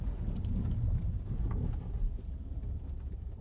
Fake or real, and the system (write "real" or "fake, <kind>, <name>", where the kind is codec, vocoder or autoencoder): fake, vocoder, BigVGAN v2